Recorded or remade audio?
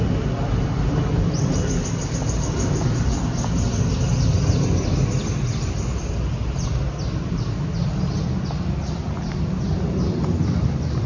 recorded